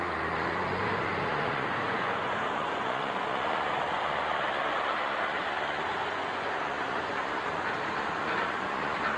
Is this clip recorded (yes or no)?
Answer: no